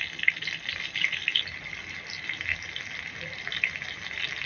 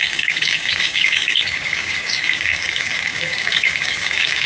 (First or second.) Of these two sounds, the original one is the first